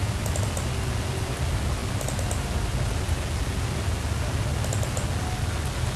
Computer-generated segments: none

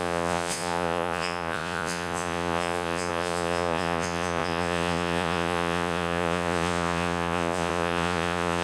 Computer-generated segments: 0.0-8.6